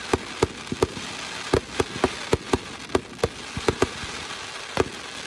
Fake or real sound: real